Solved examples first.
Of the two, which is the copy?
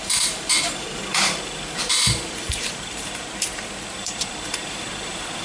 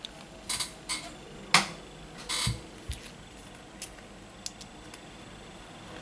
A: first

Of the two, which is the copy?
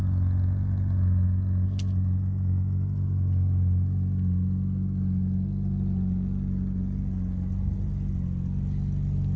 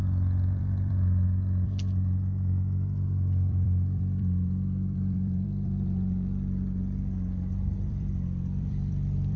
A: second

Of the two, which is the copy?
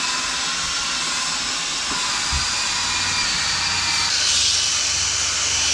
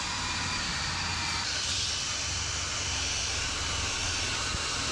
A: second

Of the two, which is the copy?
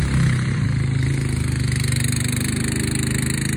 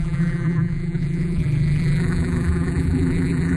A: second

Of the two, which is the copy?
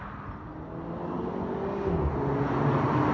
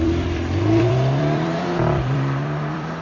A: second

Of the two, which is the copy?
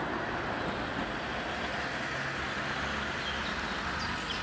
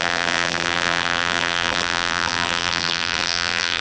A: second